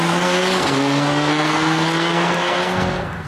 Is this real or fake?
fake